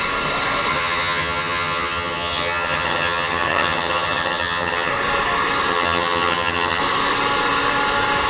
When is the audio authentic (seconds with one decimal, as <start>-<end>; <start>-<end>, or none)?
0.0-0.7; 4.9-5.7; 6.8-8.3